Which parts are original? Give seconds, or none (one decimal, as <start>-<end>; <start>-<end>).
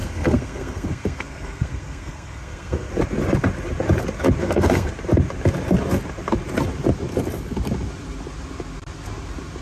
2.9-4.4; 4.9-9.6